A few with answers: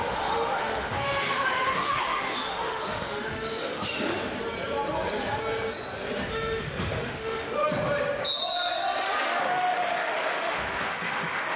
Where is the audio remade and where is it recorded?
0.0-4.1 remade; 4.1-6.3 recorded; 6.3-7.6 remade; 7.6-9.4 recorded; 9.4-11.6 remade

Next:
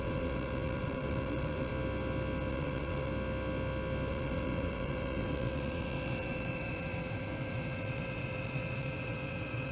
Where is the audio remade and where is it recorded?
0.0-1.7 remade; 1.7-2.5 recorded; 2.5-3.1 remade; 3.1-4.1 recorded; 4.1-9.7 remade

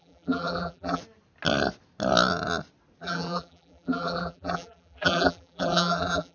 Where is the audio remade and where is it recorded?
0.0-1.0 remade; 1.0-3.0 recorded; 3.0-6.3 remade